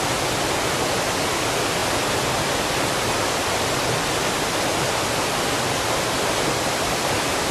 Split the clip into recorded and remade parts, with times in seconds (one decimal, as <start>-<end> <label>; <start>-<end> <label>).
0.0-7.5 recorded